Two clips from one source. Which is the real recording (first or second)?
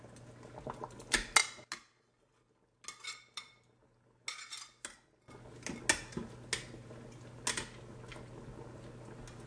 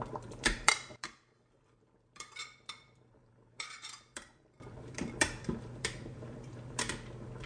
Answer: first